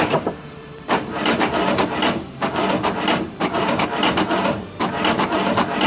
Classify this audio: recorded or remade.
remade